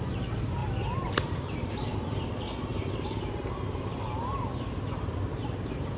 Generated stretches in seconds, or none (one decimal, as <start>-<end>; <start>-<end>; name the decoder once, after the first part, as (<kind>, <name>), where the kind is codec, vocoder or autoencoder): 0.0-0.6 (vocoder, BigVGAN v2); 1.1-1.9; 5.5-6.0